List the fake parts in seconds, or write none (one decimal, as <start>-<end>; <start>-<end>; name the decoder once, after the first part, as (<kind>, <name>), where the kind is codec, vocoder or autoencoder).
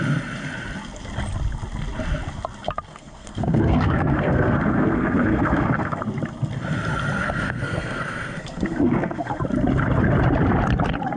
2.9-6.0 (codec, SNAC); 7.2-9.4